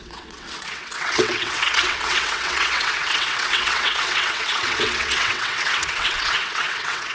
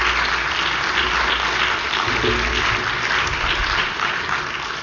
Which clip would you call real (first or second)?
second